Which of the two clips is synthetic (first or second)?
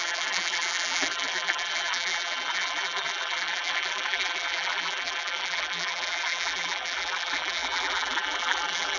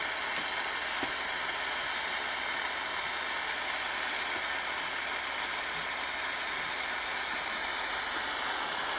first